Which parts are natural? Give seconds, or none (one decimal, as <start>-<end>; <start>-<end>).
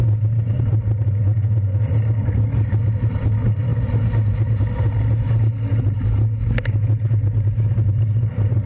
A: 0.0-8.7